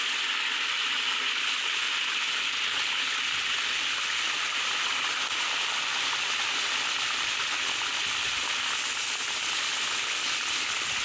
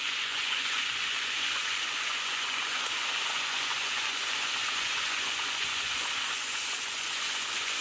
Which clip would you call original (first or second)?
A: first